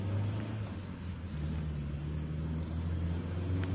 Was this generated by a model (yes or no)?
no